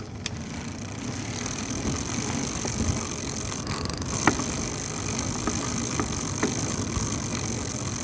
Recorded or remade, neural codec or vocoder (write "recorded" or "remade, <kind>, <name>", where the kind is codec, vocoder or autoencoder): recorded